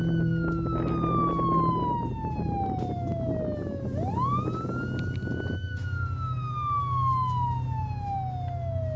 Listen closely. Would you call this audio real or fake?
real